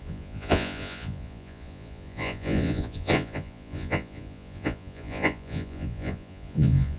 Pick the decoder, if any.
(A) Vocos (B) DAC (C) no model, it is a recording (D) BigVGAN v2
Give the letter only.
A